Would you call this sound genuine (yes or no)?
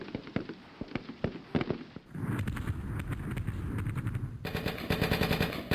yes